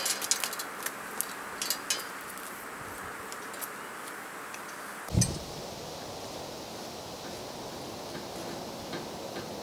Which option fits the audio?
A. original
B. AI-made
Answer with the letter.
A